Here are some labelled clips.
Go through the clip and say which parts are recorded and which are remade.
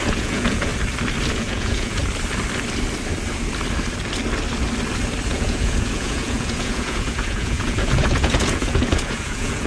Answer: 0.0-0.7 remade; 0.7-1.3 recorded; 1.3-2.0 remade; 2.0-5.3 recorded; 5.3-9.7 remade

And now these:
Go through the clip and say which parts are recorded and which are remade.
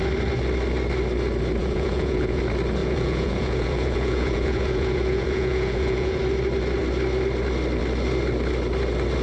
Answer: 0.0-1.6 recorded; 1.6-2.4 remade; 2.4-2.8 recorded; 2.8-6.2 remade; 6.2-9.2 recorded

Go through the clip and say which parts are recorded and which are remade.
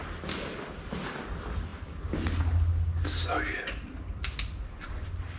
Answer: 0.0-5.4 recorded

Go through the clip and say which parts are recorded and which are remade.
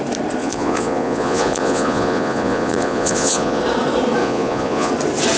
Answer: 0.0-0.4 recorded; 0.4-3.6 remade; 3.6-4.2 recorded; 4.2-4.9 remade; 4.9-5.4 recorded